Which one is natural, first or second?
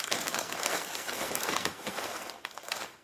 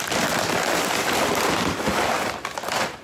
second